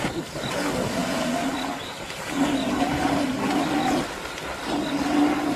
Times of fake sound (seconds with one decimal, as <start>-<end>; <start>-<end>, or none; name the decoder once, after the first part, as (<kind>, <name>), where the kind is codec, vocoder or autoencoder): none